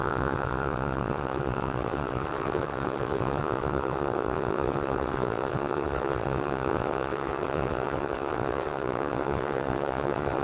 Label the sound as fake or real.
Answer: fake